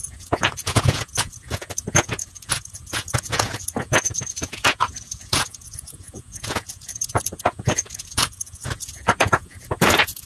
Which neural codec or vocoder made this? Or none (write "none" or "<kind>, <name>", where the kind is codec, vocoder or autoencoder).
vocoder, Vocos